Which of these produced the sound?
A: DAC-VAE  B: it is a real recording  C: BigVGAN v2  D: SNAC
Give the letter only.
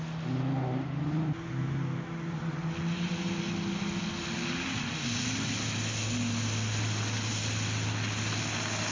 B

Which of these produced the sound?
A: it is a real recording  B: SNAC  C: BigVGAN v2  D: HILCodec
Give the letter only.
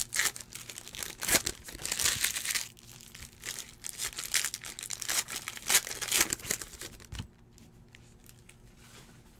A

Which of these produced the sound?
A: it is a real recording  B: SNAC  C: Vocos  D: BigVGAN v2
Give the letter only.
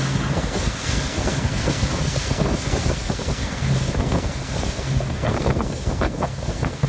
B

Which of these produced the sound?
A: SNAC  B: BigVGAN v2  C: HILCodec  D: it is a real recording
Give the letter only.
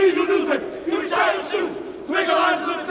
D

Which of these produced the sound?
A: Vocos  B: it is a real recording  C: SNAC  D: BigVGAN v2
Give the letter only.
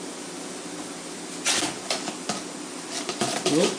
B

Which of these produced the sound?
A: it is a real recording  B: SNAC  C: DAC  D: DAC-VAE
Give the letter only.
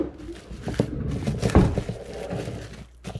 A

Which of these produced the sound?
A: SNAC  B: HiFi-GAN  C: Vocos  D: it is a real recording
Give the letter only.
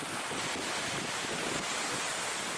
D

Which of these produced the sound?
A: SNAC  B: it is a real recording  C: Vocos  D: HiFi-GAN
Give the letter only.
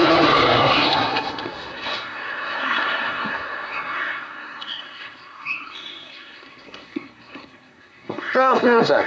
A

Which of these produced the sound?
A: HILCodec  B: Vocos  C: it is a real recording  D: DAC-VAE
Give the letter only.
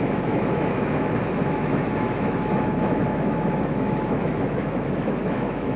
D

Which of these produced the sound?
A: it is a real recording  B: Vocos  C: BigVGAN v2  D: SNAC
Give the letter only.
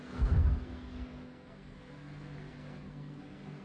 D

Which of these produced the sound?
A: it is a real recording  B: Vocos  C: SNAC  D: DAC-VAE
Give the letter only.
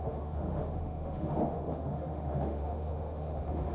D